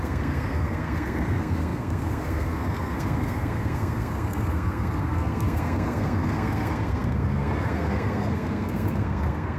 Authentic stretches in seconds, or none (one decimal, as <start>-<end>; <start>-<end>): none